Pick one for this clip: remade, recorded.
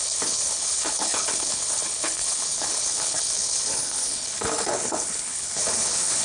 remade